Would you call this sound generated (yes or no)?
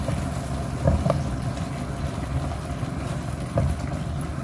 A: no